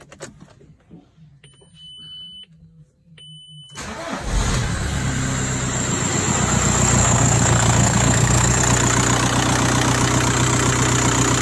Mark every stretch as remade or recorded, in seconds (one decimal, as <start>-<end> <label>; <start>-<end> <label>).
0.0-7.0 recorded; 7.0-8.6 remade; 8.6-11.4 recorded